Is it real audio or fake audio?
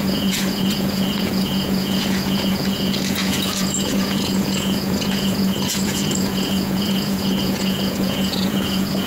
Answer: fake